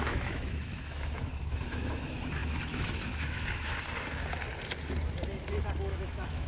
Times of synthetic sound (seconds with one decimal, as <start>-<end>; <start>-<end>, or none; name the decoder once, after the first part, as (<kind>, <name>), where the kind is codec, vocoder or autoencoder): 0.0-3.7 (autoencoder, DAC-VAE); 5.8-6.5